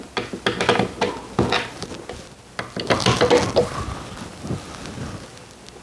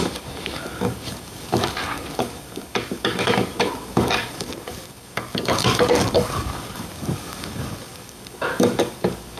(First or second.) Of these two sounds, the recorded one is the first